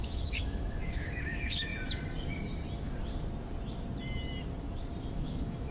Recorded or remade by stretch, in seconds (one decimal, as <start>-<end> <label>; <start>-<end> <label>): 0.0-1.7 remade; 1.7-5.1 recorded; 5.1-5.7 remade